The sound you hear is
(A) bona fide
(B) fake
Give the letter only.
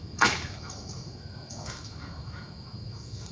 B